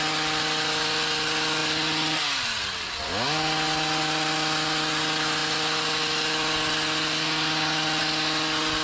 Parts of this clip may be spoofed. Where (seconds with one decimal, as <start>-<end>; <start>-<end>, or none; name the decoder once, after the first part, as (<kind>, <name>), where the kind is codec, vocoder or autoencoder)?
none